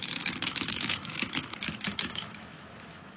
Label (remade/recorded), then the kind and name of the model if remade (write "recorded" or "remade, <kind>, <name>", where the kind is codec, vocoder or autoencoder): remade, autoencoder, DAC-VAE